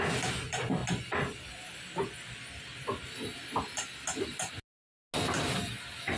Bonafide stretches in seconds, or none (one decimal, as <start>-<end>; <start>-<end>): 0.0-6.2